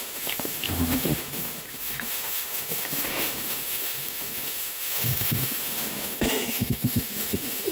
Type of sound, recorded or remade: remade